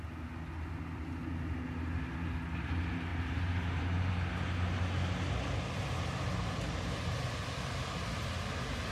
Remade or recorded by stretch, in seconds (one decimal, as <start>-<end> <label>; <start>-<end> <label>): 0.0-3.1 recorded; 3.1-4.1 remade; 4.1-8.9 recorded